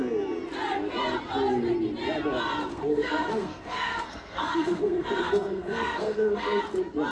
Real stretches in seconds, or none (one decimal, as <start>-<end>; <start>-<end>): 0.0-2.7; 6.6-7.1